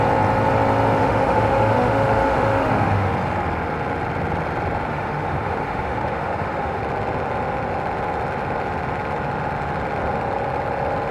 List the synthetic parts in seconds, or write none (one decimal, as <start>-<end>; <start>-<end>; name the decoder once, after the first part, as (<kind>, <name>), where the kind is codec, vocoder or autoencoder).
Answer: 1.0-3.1 (autoencoder, DAC-VAE); 4.9-6.8